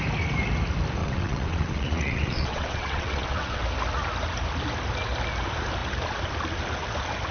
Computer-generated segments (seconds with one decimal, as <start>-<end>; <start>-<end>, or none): 1.0-3.6

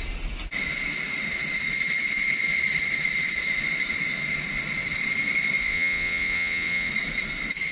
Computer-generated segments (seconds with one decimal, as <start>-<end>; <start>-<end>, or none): 5.6-6.9

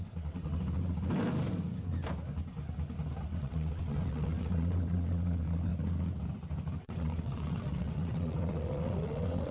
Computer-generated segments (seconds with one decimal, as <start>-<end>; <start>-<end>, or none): 0.0-0.5; 3.2-5.7; 6.8-9.5

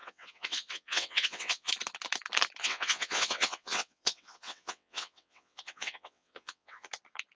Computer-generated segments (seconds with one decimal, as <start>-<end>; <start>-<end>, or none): 0.0-1.7; 2.6-6.9

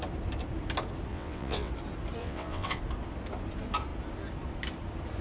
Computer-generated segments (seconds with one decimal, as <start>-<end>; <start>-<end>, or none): 1.1-1.7; 2.2-2.8

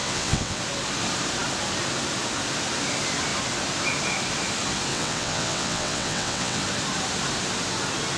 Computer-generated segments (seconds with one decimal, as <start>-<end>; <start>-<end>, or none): 0.0-0.6; 4.9-6.6